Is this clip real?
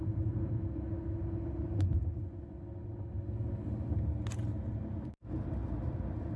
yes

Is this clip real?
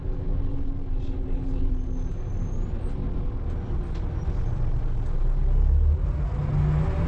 yes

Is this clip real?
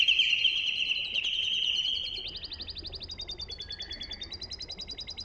yes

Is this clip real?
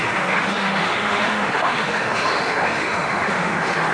no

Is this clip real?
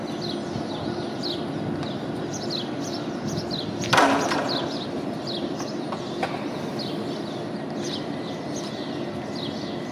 yes